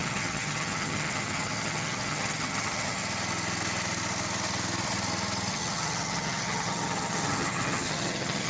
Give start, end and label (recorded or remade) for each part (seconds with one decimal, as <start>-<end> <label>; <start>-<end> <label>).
0.0-3.0 remade; 3.0-5.5 recorded; 5.5-8.5 remade